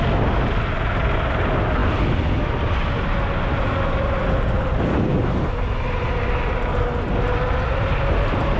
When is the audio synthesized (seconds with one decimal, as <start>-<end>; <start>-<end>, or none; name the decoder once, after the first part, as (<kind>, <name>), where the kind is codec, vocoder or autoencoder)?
none